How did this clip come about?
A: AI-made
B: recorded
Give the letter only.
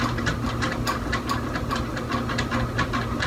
B